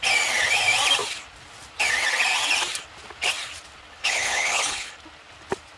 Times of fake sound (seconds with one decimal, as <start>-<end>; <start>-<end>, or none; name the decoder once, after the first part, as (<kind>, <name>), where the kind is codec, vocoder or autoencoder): 3.9-4.9 (codec, HILCodec)